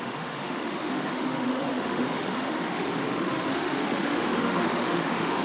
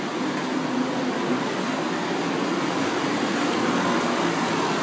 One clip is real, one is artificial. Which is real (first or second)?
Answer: second